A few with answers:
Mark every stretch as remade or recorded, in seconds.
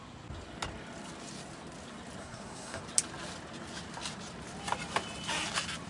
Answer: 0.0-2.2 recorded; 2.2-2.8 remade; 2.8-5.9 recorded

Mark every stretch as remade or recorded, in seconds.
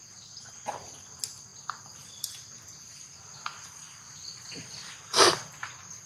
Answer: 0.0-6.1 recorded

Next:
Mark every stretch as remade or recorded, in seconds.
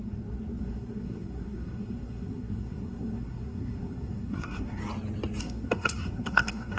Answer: 0.0-4.8 remade; 4.8-5.4 recorded; 5.4-6.8 remade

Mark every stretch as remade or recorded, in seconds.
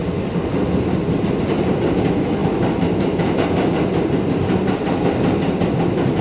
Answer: 0.0-6.2 recorded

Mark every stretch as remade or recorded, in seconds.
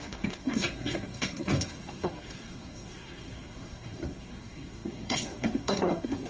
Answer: 0.0-6.3 remade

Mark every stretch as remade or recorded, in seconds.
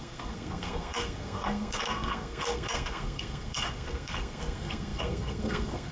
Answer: 0.0-5.9 remade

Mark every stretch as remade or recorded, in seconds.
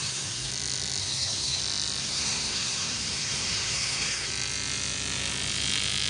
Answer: 0.0-0.5 remade; 0.5-1.0 recorded; 1.0-1.6 remade; 1.6-2.0 recorded; 2.0-4.3 remade; 4.3-6.1 recorded